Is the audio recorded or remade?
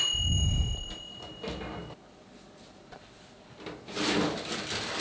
recorded